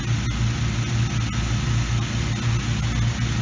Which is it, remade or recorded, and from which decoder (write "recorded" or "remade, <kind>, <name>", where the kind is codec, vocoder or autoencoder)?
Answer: recorded